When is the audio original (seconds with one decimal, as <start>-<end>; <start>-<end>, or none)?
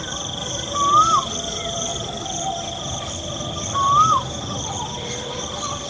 0.0-5.9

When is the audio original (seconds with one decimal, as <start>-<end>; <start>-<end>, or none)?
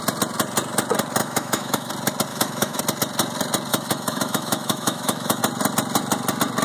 0.0-1.2; 1.9-2.3; 2.8-3.7; 5.4-6.6